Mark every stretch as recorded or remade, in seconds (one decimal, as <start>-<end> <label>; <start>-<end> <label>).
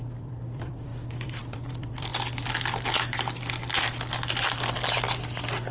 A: 0.0-2.1 remade; 2.1-5.7 recorded